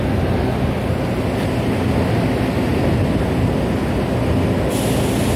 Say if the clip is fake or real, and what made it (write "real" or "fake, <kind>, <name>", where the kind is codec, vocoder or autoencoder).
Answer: real